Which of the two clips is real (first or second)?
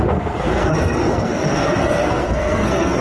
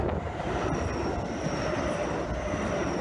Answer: second